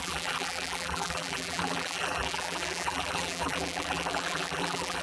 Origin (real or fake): fake